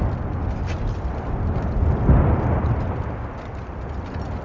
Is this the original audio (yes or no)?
yes